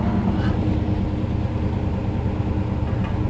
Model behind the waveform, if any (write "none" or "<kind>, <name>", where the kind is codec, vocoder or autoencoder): none